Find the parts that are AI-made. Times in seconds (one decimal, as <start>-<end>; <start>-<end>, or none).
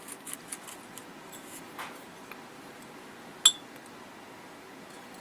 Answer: none